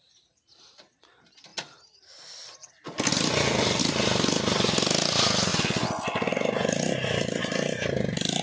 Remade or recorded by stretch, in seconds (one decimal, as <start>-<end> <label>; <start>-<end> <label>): 0.0-1.5 remade; 1.5-3.8 recorded; 3.8-5.5 remade; 5.5-7.4 recorded; 7.4-8.4 remade